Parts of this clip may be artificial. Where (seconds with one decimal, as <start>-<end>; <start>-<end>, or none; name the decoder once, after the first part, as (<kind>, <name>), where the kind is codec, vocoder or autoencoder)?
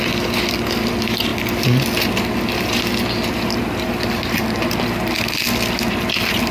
none